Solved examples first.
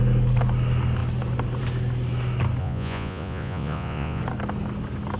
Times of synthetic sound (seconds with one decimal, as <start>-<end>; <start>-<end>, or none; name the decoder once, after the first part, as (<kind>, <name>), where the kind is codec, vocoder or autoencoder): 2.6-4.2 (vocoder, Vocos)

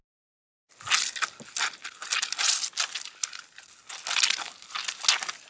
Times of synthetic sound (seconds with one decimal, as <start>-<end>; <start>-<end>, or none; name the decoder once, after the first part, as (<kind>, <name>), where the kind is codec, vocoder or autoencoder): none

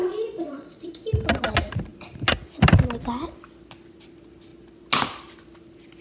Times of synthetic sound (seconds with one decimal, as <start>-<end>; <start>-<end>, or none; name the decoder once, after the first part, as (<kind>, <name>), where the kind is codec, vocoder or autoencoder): 0.0-1.0 (vocoder, Vocos)